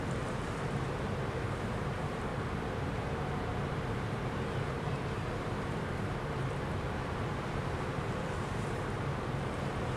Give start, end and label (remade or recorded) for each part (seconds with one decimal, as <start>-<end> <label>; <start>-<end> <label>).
0.0-2.3 remade; 2.3-2.8 recorded; 2.8-10.0 remade